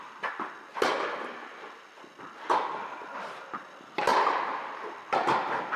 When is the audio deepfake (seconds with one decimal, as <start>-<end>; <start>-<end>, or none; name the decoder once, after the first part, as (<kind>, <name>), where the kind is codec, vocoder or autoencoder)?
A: none